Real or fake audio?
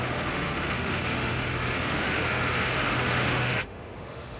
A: fake